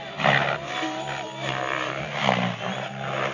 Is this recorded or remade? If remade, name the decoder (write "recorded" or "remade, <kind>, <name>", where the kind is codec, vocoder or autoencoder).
recorded